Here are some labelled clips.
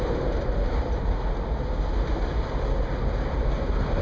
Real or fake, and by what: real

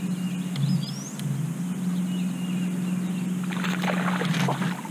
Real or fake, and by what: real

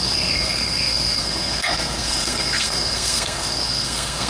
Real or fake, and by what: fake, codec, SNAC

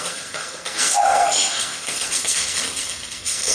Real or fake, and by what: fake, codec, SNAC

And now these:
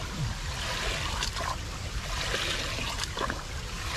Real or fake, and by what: real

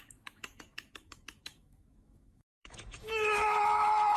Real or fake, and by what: fake, autoencoder, DAC-VAE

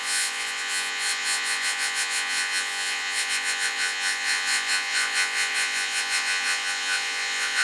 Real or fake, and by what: fake, vocoder, Vocos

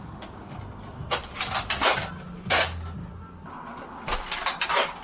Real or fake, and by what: real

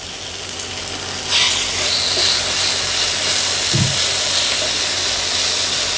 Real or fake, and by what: real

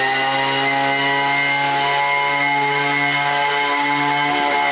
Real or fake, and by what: real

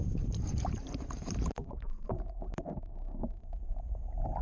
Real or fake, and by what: fake, vocoder, BigVGAN v2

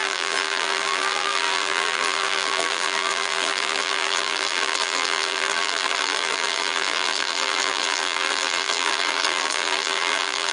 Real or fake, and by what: fake, vocoder, BigVGAN v2